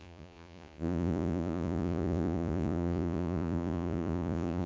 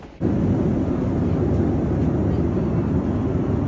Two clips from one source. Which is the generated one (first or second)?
first